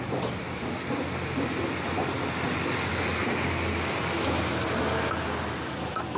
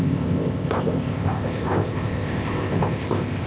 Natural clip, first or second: first